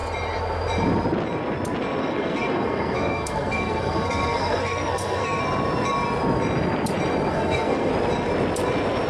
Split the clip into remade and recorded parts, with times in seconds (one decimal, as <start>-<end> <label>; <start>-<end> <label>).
0.0-2.0 recorded; 2.0-5.4 remade; 5.4-7.3 recorded; 7.3-7.9 remade; 7.9-9.1 recorded